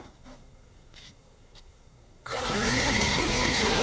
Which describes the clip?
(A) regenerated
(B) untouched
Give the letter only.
A